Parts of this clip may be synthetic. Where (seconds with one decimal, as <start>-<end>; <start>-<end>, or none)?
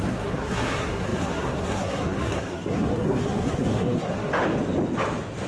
0.0-4.3